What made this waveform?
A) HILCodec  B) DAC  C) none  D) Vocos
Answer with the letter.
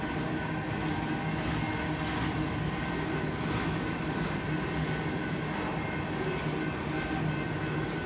C